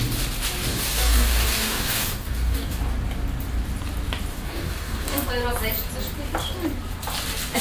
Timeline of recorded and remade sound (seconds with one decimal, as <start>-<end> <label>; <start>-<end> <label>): 0.0-0.7 recorded; 0.7-2.8 remade; 2.8-4.3 recorded; 4.3-5.3 remade; 5.3-7.6 recorded

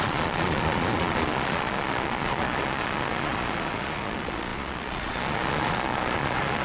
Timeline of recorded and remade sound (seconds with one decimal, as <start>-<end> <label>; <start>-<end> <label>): 0.0-6.6 remade

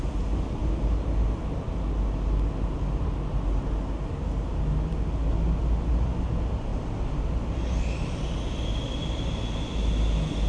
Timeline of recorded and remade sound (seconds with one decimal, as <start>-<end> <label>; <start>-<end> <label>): 0.0-10.5 recorded

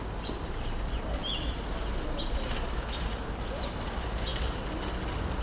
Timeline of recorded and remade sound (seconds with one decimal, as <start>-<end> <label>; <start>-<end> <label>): 0.0-5.4 recorded